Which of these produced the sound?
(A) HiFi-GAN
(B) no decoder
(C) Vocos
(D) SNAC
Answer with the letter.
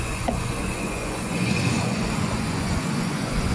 C